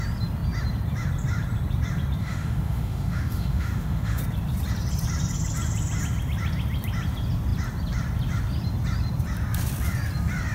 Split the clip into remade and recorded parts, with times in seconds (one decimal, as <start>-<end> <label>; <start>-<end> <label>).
0.0-2.2 recorded; 2.2-4.2 remade; 4.2-10.5 recorded